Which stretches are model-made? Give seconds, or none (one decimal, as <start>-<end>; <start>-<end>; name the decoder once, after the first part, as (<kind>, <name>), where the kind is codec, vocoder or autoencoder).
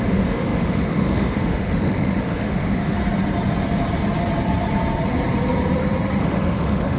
0.0-3.0 (autoencoder, DAC-VAE); 6.2-7.0